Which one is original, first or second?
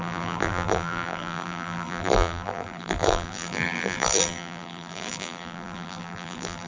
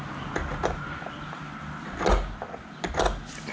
second